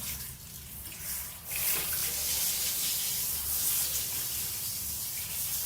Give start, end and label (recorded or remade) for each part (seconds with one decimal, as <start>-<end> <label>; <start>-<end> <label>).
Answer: 0.0-2.0 recorded; 2.0-2.9 remade; 2.9-4.7 recorded; 4.7-5.7 remade